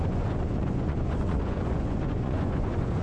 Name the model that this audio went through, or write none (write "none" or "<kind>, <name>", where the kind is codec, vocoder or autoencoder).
vocoder, Vocos